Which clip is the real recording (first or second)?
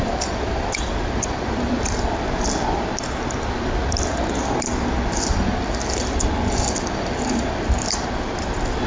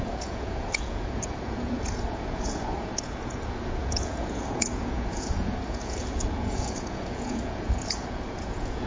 first